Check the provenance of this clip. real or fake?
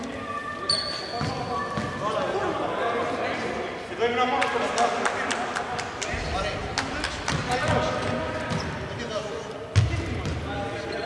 real